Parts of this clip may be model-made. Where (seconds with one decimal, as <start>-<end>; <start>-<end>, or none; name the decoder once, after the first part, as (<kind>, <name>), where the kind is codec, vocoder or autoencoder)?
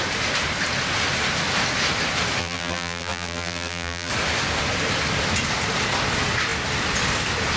2.4-4.1 (vocoder, BigVGAN v2)